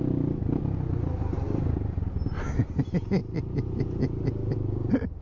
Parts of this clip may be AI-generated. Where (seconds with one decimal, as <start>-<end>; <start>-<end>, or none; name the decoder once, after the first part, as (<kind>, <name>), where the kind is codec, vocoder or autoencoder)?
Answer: none